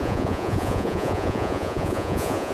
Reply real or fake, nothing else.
fake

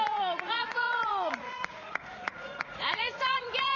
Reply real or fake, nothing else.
fake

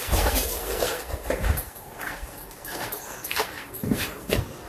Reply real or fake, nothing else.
fake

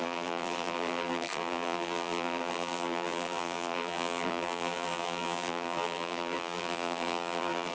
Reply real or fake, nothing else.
fake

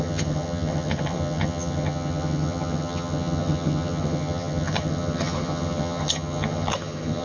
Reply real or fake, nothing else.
fake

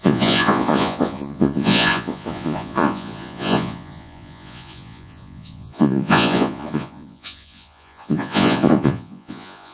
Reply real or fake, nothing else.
fake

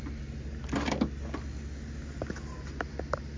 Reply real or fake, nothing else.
real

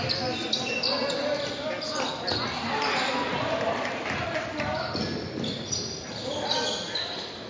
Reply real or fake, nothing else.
real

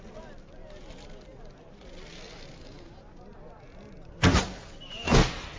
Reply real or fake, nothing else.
real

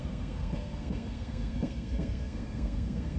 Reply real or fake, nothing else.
fake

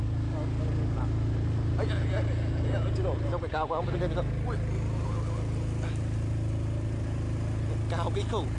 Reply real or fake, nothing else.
real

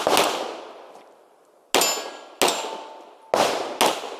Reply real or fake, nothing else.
real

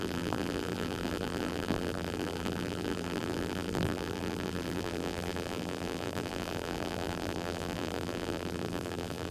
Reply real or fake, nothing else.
fake